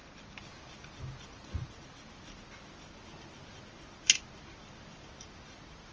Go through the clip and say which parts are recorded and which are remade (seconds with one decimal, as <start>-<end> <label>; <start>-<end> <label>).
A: 0.0-5.9 recorded